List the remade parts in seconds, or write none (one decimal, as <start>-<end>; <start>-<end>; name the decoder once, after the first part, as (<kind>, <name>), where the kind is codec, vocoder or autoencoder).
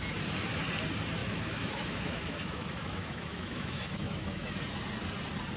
1.2-4.6 (autoencoder, DAC-VAE)